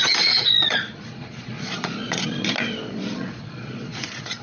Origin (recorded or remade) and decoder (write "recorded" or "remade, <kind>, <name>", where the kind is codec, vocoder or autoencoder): remade, vocoder, Vocos